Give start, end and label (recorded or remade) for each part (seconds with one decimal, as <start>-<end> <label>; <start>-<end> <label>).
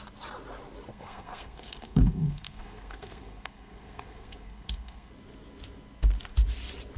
0.0-0.9 recorded; 0.9-5.1 remade; 5.1-7.0 recorded